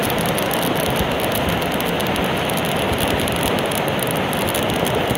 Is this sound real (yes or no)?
yes